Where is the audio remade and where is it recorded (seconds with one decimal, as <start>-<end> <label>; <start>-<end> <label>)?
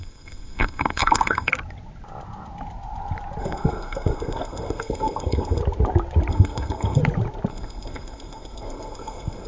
0.0-1.5 remade; 1.5-3.4 recorded; 3.4-5.6 remade; 5.6-6.3 recorded; 6.3-7.0 remade; 7.0-7.5 recorded; 7.5-9.5 remade